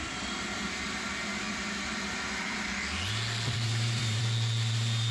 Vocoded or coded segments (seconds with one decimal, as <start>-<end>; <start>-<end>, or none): 1.2-1.8; 3.7-4.2